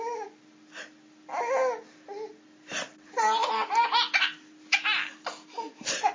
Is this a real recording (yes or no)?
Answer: yes